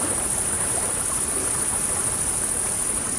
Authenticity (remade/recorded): recorded